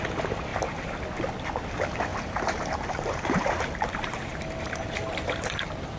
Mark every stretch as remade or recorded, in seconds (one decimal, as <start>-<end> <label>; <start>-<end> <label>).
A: 0.0-0.5 recorded; 0.5-1.2 remade; 1.2-2.1 recorded; 2.1-6.0 remade